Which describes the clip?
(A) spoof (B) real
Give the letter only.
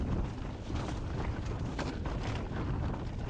B